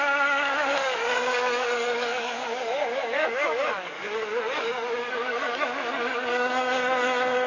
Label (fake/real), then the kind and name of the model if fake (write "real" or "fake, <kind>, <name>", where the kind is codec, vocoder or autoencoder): fake, codec, DAC